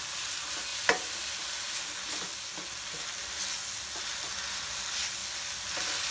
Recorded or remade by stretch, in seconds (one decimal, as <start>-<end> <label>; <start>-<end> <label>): 0.0-6.1 recorded